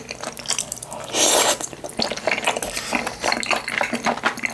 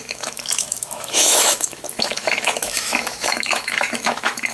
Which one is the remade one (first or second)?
second